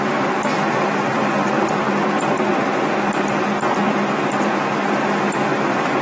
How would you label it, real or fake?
real